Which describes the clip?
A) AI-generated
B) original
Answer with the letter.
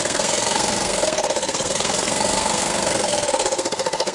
A